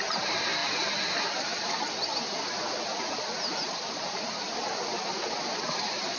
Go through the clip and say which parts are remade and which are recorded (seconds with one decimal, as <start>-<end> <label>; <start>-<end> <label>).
0.0-6.2 recorded